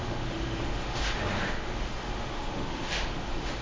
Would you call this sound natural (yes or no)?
no